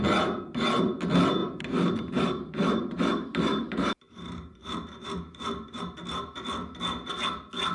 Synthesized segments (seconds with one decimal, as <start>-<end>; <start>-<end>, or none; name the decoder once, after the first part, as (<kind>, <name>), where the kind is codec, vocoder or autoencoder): 1.4-5.8 (vocoder, BigVGAN v2)